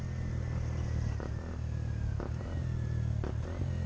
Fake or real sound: real